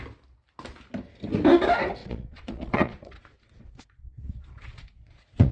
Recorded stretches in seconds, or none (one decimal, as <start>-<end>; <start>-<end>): 0.0-2.0